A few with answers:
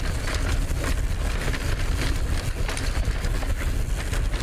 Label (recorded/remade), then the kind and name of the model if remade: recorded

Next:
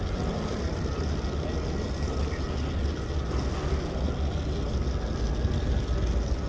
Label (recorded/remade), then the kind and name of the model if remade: recorded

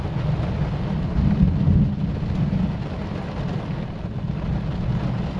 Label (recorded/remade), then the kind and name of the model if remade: recorded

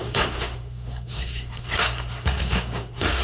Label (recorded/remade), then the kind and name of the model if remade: remade, codec, SNAC